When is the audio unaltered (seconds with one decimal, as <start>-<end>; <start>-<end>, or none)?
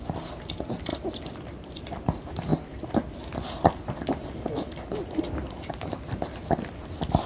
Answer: 0.0-7.3